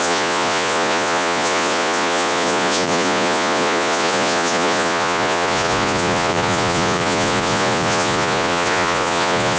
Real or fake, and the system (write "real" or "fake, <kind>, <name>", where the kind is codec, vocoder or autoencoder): fake, vocoder, Vocos